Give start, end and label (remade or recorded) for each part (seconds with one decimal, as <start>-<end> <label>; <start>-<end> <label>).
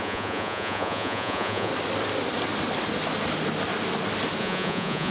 0.0-1.7 remade; 1.7-4.4 recorded; 4.4-5.1 remade